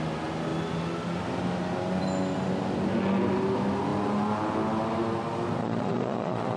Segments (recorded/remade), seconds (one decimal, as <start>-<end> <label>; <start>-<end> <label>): 0.0-5.6 recorded; 5.6-6.6 remade